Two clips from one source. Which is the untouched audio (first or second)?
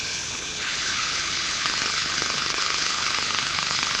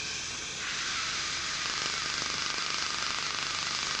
second